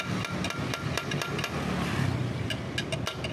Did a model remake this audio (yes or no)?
no